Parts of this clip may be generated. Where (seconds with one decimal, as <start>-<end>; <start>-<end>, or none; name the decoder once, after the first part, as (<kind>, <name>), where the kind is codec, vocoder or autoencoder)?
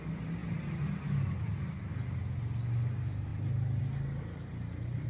none